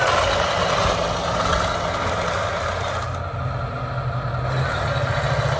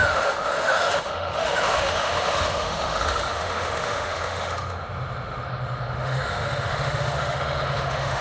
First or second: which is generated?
second